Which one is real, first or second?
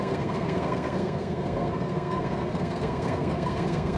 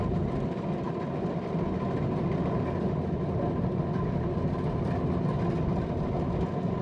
second